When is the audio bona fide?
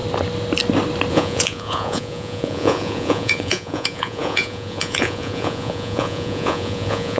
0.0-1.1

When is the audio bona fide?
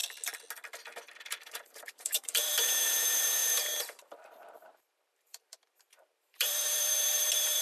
0.0-1.3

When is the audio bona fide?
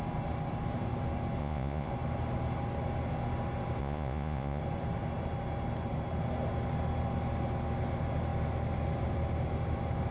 0.0-1.4; 1.9-3.8; 4.6-10.1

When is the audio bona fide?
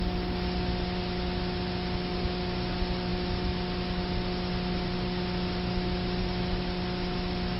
0.0-7.6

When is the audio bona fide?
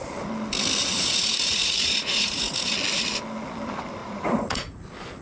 0.0-0.8; 2.7-4.0; 4.8-5.2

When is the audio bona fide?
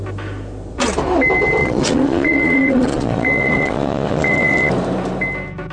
0.0-1.6; 4.7-5.7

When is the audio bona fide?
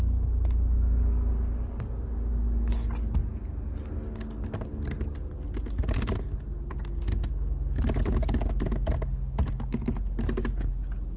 0.0-11.2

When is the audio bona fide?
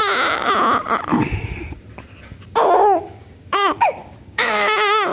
0.0-3.1